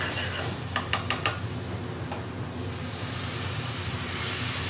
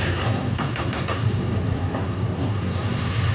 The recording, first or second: first